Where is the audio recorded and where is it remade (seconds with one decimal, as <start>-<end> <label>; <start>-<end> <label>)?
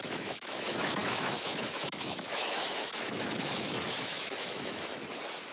0.0-5.0 remade; 5.0-5.5 recorded